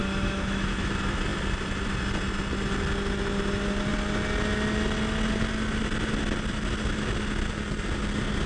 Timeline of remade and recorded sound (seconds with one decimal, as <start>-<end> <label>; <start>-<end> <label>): 0.0-0.9 remade; 0.9-8.5 recorded